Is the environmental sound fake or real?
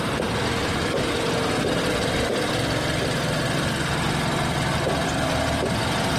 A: real